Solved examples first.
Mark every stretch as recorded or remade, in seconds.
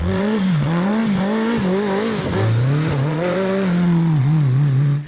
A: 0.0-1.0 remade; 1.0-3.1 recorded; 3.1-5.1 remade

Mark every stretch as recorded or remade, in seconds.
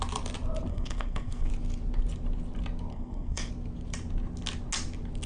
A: 0.0-0.7 recorded; 0.7-1.5 remade; 1.5-2.9 recorded; 2.9-3.5 remade; 3.5-5.3 recorded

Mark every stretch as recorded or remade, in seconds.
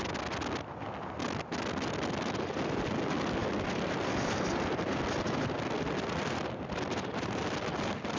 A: 0.0-8.2 recorded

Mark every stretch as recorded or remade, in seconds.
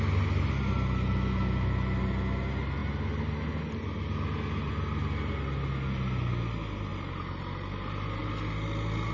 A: 0.0-9.1 recorded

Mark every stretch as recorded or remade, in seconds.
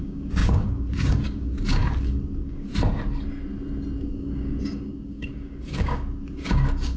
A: 0.0-2.7 remade; 2.7-4.1 recorded; 4.1-7.0 remade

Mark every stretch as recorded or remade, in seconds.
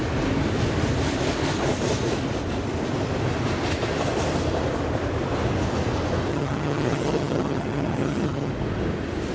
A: 0.0-6.3 recorded; 6.3-8.5 remade; 8.5-9.3 recorded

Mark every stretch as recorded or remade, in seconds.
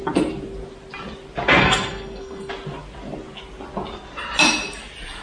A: 0.0-1.6 recorded; 1.6-2.5 remade; 2.5-5.2 recorded